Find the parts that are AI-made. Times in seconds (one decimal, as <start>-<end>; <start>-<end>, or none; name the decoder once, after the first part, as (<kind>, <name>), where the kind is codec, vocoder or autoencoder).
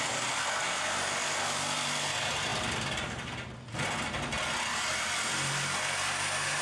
none